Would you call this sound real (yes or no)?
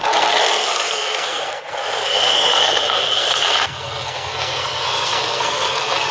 no